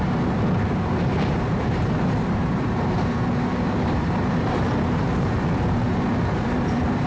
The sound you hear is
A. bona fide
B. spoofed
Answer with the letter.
B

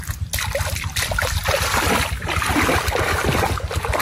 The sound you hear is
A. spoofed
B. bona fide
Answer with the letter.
B